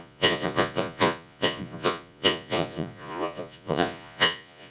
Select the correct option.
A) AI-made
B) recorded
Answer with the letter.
A